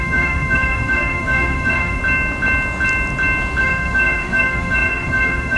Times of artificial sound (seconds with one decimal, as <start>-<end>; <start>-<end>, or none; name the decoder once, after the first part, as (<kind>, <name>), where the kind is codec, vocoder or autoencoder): 0.0-2.0 (autoencoder, DAC-VAE); 3.6-5.6